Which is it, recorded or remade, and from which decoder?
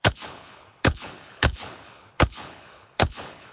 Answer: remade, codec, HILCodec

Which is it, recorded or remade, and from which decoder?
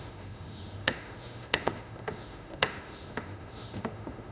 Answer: remade, autoencoder, DAC-VAE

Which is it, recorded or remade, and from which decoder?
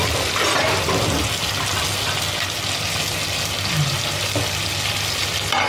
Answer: recorded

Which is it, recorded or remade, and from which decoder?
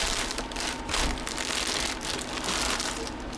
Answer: recorded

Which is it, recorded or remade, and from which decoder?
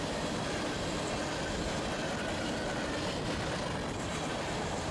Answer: recorded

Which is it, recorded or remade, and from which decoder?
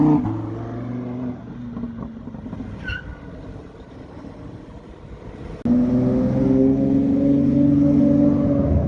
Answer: recorded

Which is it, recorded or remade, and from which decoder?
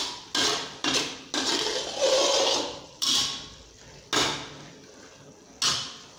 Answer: recorded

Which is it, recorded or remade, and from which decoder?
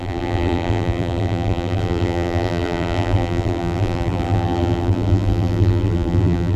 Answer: remade, vocoder, BigVGAN v2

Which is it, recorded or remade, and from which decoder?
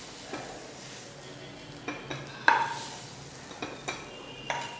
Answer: recorded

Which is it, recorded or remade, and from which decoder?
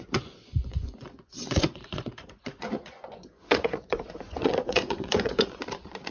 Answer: remade, vocoder, Vocos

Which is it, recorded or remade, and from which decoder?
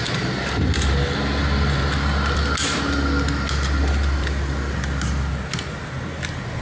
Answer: recorded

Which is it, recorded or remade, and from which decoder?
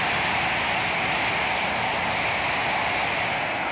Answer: recorded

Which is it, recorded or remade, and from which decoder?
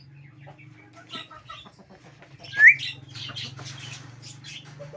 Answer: recorded